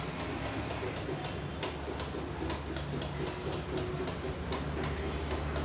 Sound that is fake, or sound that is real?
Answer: real